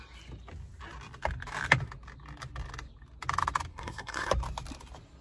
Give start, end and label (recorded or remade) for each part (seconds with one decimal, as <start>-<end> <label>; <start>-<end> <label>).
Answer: 0.0-3.7 recorded; 3.7-4.3 remade; 4.3-5.2 recorded